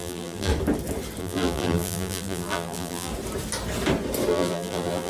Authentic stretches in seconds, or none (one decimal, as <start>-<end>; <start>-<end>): 0.5-1.2; 3.1-4.3